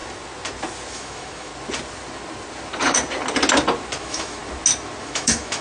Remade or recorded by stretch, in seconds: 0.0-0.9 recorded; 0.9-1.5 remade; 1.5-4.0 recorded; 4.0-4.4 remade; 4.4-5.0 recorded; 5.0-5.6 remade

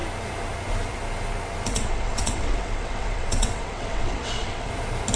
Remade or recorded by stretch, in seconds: 0.0-1.7 recorded; 1.7-4.7 remade; 4.7-5.2 recorded

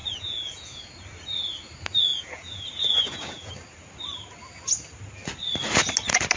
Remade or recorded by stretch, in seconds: 0.0-0.9 remade; 0.9-2.1 recorded; 2.1-3.5 remade; 3.5-6.4 recorded